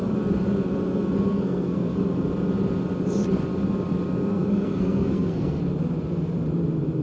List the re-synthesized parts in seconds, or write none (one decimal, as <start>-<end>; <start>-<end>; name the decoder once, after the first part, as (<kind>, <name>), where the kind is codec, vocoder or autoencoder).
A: 1.3-2.0 (codec, SNAC); 4.3-5.6